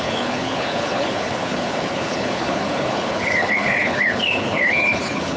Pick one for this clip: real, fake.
fake